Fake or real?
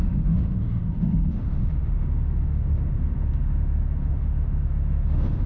fake